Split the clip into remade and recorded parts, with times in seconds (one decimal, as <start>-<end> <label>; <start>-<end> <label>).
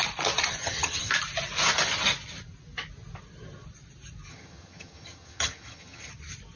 0.0-0.6 recorded; 0.6-1.1 remade; 1.1-4.3 recorded; 4.3-6.1 remade; 6.1-6.6 recorded